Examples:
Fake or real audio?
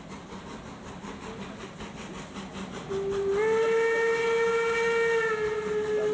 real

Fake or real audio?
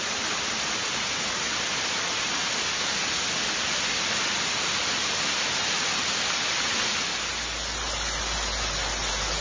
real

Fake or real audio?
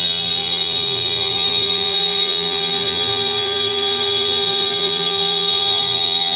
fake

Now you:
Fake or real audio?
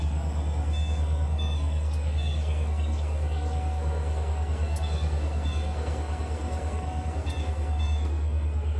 fake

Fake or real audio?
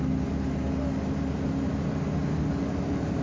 real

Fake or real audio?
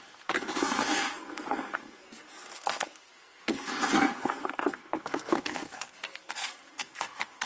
fake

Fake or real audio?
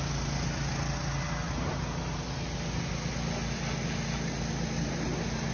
real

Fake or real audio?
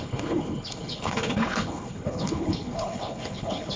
fake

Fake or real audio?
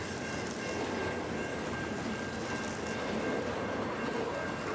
real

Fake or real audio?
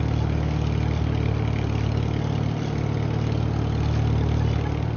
real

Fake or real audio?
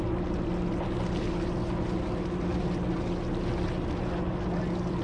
real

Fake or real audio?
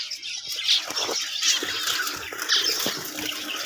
real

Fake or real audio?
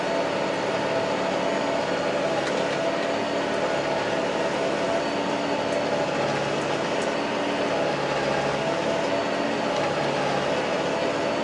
real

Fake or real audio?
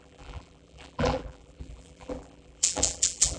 fake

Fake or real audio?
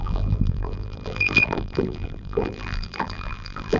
fake